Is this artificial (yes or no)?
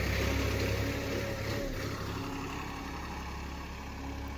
no